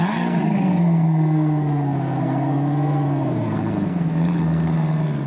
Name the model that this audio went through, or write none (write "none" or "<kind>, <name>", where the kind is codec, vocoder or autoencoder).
codec, SNAC